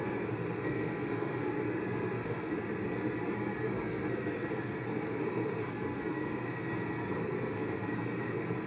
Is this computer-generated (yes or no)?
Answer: yes